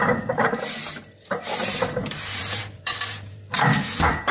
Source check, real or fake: fake